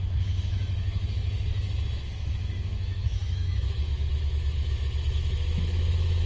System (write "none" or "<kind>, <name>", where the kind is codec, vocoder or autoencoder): autoencoder, DAC-VAE